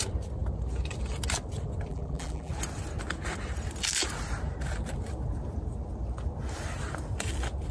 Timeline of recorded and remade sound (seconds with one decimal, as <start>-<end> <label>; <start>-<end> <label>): 0.0-1.9 recorded; 1.9-2.5 remade; 2.5-7.7 recorded